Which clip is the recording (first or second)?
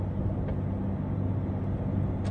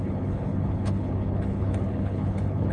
first